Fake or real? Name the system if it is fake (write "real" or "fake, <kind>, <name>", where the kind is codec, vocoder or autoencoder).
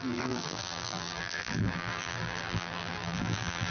fake, vocoder, BigVGAN v2